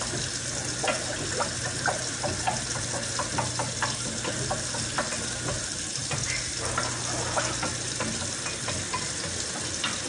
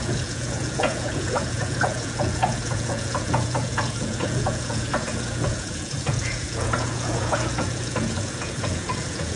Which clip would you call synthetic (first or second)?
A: second